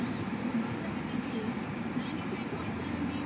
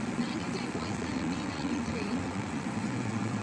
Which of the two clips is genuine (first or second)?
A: first